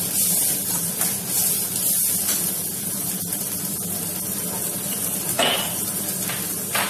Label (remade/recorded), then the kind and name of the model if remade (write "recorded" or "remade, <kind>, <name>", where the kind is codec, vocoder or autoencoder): recorded